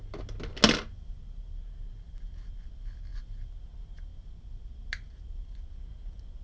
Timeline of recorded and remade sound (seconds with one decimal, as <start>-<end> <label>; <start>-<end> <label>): 0.0-6.4 recorded